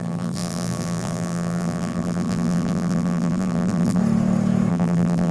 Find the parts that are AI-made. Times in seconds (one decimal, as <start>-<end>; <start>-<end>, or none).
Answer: 0.0-4.0; 4.7-5.3